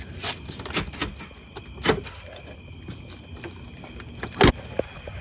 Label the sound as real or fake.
real